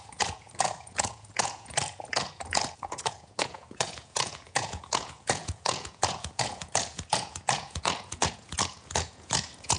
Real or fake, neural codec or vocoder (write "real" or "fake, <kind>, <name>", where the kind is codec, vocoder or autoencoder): fake, vocoder, Vocos